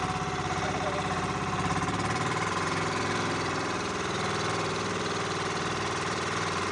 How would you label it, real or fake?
fake